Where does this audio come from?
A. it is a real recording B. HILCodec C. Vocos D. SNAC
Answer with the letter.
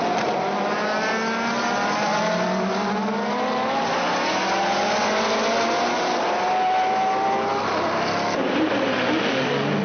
A